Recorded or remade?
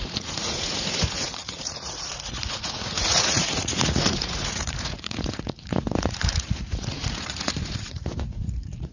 remade